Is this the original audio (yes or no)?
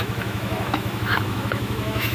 no